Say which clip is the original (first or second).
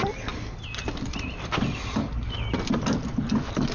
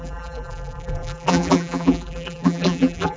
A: first